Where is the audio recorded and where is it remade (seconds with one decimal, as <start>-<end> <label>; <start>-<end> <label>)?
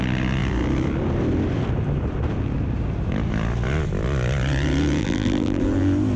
0.0-5.0 recorded; 5.0-5.6 remade; 5.6-6.2 recorded